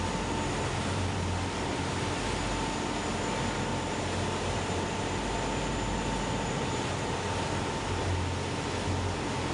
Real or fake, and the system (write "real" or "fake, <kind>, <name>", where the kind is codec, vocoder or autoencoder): real